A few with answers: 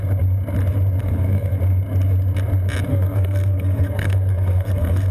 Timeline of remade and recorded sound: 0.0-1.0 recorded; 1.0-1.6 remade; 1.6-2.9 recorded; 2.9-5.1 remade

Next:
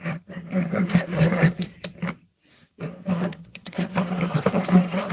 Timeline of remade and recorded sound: 0.0-1.7 remade; 1.7-2.5 recorded; 2.5-5.1 remade

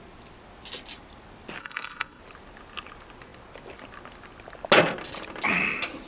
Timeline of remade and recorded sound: 0.0-1.6 recorded; 1.6-2.2 remade; 2.2-6.1 recorded

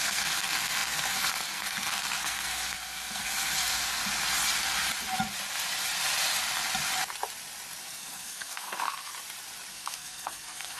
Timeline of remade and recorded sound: 0.0-4.0 remade; 4.0-7.8 recorded; 7.8-9.1 remade; 9.1-9.7 recorded; 9.7-10.8 remade

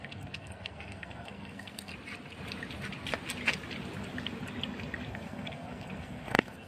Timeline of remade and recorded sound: 0.0-1.9 remade; 1.9-5.1 recorded; 5.1-6.7 remade

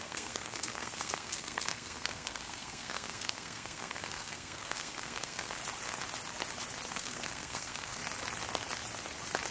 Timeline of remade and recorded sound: 0.0-5.6 remade; 5.6-6.9 recorded; 6.9-8.0 remade; 8.0-9.5 recorded